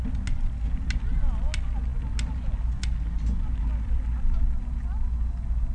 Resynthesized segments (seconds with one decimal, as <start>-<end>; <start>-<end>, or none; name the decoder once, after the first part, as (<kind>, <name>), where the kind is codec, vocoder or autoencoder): none